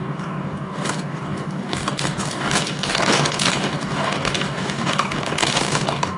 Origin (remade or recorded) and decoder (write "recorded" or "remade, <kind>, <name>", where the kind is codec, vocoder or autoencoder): remade, codec, DAC